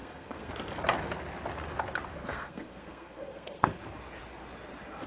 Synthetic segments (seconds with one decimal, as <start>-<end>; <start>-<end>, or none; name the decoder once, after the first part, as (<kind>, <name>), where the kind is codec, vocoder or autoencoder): 0.0-0.5 (codec, SNAC); 2.2-3.8